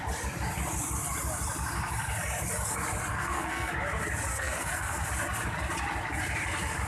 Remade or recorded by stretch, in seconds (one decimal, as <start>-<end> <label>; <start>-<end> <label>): 0.0-3.1 recorded; 3.1-3.7 remade; 3.7-4.3 recorded; 4.3-5.1 remade; 5.1-6.9 recorded